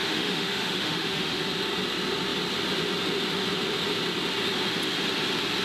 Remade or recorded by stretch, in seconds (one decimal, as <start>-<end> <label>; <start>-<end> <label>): 0.0-1.4 remade; 1.4-5.6 recorded